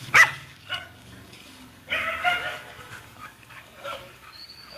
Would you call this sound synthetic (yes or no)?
yes